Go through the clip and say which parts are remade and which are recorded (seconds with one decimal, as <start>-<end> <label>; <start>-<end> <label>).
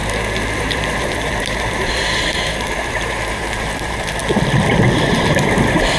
0.0-0.6 recorded; 0.6-4.2 remade; 4.2-4.9 recorded; 4.9-6.0 remade